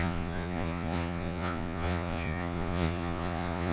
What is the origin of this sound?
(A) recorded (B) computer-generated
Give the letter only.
B